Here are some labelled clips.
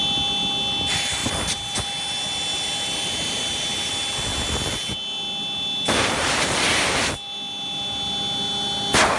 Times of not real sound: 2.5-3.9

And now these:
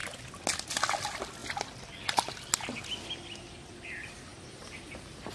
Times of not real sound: 0.8-1.4; 3.7-5.3

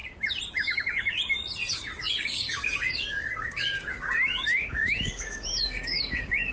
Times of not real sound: 0.5-1.2; 1.7-6.5

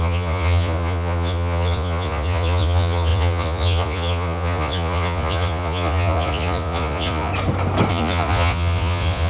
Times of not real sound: 0.0-7.3; 7.9-9.3